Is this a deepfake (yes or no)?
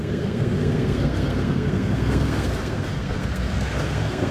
yes